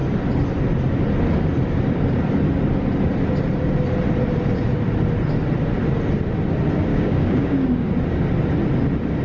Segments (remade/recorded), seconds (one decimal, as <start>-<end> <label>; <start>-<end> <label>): 0.0-6.9 recorded; 6.9-7.9 remade; 7.9-9.2 recorded